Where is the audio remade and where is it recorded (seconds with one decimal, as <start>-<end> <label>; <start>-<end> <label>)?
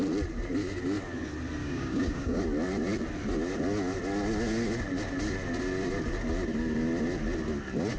0.0-1.6 recorded; 1.6-2.4 remade; 2.4-8.0 recorded